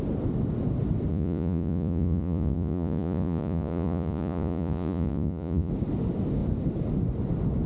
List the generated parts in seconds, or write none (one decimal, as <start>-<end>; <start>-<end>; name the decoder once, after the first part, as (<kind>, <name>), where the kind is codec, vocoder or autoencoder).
1.1-5.7 (vocoder, Vocos)